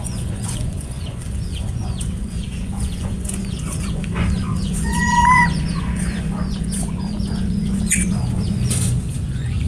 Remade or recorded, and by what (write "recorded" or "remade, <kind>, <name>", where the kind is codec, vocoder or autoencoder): remade, vocoder, Vocos